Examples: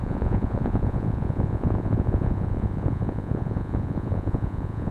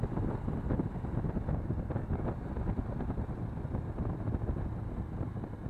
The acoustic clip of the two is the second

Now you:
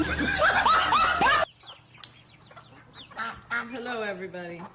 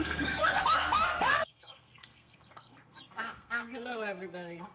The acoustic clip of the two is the first